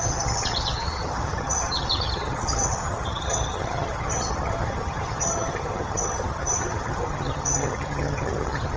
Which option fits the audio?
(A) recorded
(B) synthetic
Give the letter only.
B